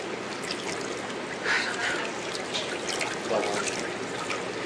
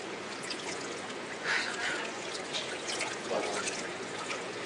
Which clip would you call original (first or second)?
first